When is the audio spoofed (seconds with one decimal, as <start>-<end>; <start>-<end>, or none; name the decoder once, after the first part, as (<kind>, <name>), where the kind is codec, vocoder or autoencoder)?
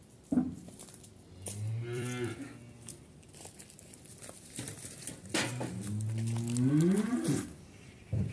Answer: 0.0-5.5 (vocoder, BigVGAN v2); 6.7-8.3